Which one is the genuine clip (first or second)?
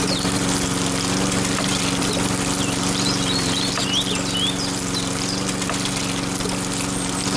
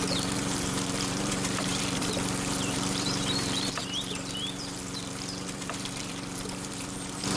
first